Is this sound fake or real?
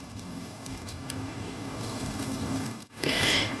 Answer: fake